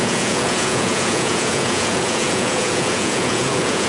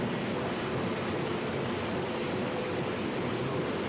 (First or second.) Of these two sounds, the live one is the second